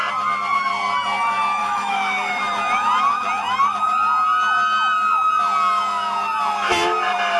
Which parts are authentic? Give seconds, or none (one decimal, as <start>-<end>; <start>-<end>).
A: 0.0-1.6; 2.4-7.4